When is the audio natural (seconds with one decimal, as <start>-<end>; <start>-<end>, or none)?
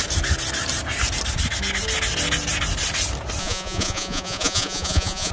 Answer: 0.0-3.4